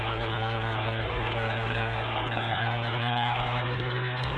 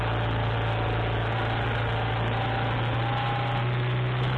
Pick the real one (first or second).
second